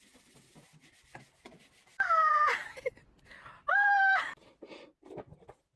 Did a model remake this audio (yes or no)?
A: no